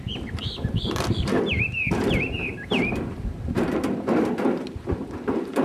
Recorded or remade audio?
remade